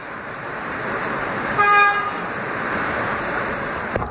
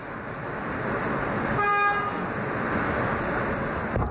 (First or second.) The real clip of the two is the second